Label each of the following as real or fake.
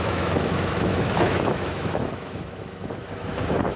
fake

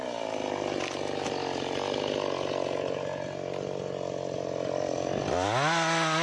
real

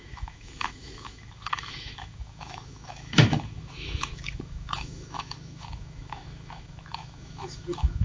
fake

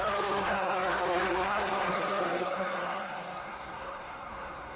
fake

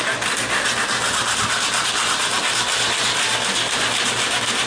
real